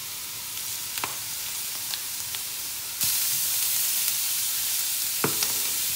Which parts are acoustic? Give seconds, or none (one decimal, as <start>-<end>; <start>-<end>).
0.5-1.1; 4.7-6.0